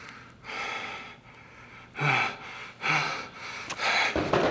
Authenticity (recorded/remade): recorded